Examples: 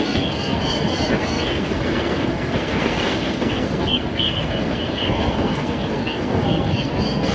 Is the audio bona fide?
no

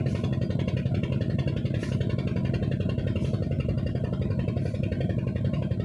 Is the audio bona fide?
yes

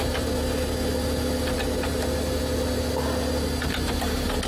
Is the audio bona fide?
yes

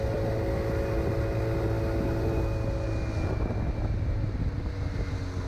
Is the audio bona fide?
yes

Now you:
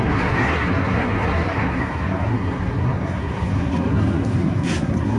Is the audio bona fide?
no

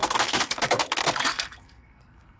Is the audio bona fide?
no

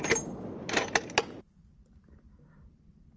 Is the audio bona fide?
yes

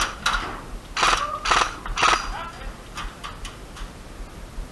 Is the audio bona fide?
yes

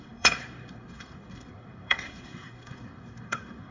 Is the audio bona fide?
no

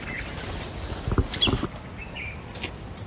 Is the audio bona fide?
yes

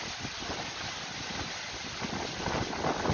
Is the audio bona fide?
yes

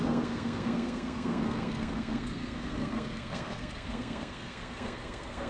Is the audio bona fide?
no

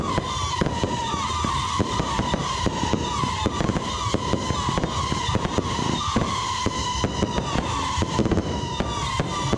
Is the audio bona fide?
yes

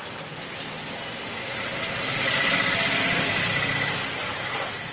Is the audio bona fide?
yes